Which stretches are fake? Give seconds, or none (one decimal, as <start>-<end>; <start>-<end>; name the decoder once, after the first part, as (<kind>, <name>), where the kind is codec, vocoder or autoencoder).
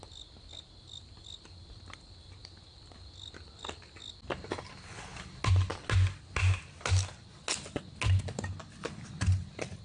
none